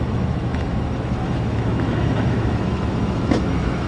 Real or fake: fake